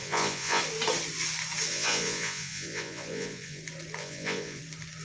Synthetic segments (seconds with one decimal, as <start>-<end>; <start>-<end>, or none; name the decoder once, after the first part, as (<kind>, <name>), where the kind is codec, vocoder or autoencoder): 0.0-0.6 (vocoder, Vocos); 1.7-3.6; 4.0-4.6